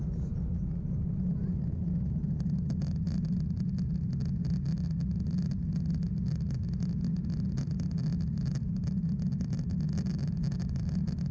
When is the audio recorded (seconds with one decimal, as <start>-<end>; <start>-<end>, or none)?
0.0-10.1; 10.8-11.3